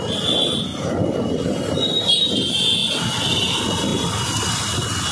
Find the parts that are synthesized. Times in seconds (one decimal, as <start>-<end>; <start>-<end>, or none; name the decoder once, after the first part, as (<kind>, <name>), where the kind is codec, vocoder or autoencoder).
none